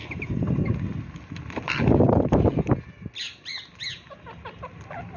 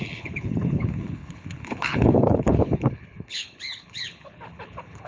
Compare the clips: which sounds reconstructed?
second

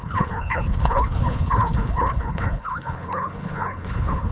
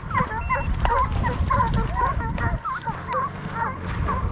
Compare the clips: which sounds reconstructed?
first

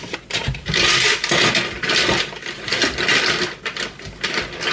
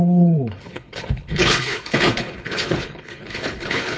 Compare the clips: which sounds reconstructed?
second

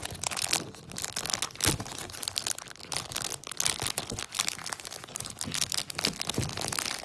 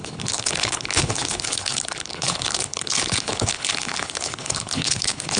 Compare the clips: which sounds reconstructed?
second